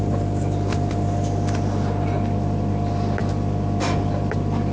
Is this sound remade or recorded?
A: recorded